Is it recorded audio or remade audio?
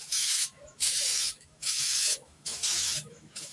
remade